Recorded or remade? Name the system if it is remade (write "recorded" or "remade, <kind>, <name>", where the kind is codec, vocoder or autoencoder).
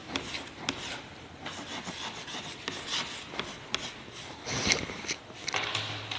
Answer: recorded